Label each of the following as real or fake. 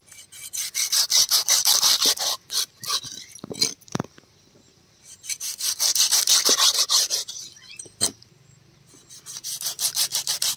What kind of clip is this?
fake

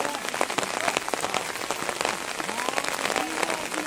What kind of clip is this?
real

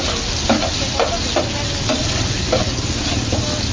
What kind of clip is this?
real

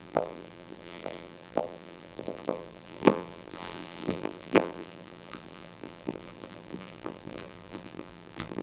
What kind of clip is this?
fake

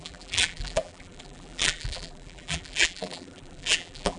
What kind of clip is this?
fake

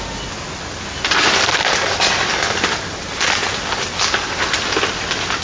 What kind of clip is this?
real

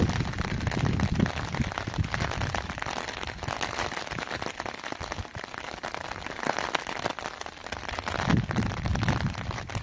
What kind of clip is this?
real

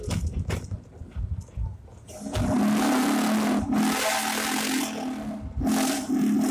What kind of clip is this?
real